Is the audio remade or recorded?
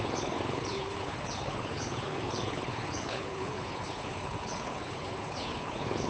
remade